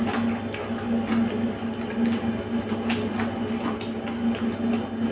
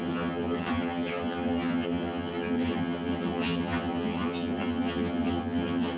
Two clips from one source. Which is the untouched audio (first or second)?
first